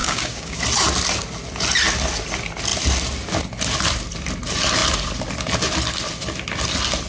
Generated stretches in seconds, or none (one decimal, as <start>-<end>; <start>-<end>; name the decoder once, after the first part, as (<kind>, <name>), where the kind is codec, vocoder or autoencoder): 0.0-0.6 (codec, DAC)